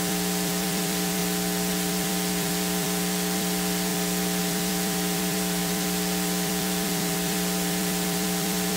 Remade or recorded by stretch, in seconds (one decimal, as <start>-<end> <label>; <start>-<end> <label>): 0.0-1.2 remade; 1.2-1.7 recorded; 1.7-8.8 remade